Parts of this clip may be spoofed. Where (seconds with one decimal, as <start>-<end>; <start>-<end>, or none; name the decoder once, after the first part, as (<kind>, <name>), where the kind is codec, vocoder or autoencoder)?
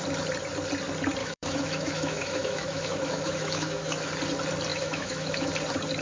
1.2-4.1 (autoencoder, DAC-VAE); 4.7-5.5